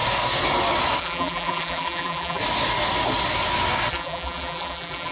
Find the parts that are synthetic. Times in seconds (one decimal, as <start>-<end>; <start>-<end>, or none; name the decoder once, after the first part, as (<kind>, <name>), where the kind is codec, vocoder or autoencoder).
1.0-2.4 (vocoder, BigVGAN v2); 3.9-5.1